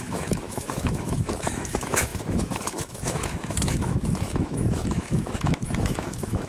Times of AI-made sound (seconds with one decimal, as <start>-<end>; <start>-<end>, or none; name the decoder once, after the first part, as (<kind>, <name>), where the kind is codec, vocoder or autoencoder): 0.0-6.5 (autoencoder, DAC-VAE)